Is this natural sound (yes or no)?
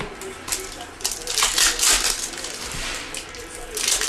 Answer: yes